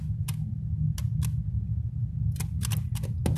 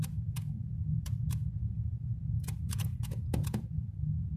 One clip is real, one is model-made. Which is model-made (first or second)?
second